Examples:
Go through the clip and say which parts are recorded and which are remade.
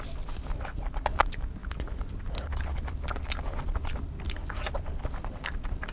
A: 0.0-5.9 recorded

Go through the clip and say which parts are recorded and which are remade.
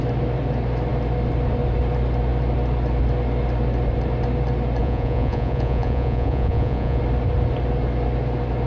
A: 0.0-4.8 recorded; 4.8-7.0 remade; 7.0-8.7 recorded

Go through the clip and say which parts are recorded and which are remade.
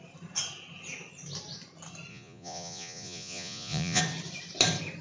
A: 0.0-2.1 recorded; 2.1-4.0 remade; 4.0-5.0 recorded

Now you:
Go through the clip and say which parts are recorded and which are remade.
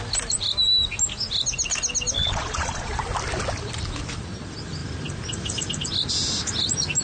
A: 0.0-2.2 recorded; 2.2-3.0 remade; 3.0-7.0 recorded